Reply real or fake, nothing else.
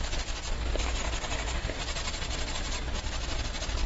real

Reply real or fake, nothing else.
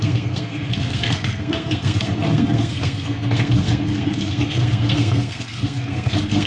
fake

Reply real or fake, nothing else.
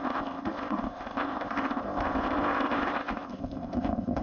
fake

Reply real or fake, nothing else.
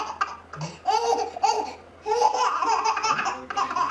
real